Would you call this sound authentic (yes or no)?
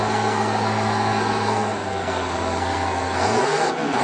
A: no